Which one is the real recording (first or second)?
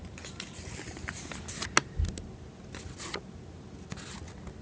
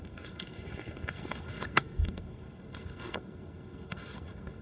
first